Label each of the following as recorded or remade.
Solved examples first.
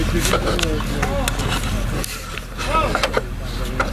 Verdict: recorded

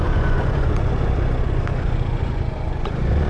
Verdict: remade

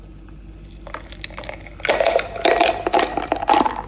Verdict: recorded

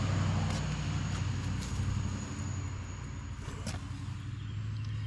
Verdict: recorded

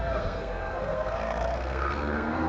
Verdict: remade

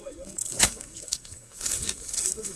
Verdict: remade